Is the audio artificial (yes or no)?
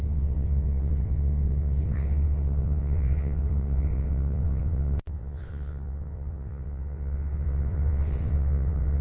yes